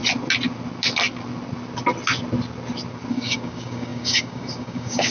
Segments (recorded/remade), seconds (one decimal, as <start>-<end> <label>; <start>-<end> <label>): 0.0-3.1 recorded; 3.1-5.1 remade

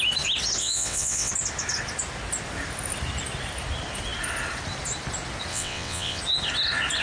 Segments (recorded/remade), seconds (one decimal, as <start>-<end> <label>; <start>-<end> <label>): 0.0-0.6 recorded; 0.6-1.3 remade; 1.3-5.5 recorded; 5.5-6.2 remade; 6.2-7.0 recorded

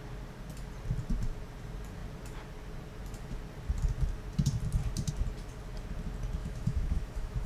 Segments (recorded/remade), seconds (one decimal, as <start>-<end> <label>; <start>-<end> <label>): 0.0-6.4 recorded; 6.4-7.5 remade

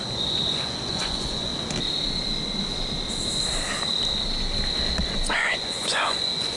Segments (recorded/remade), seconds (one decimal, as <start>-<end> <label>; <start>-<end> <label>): 0.0-1.5 remade; 1.5-5.0 recorded; 5.0-6.6 remade